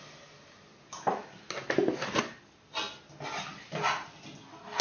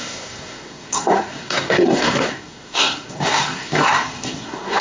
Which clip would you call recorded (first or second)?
first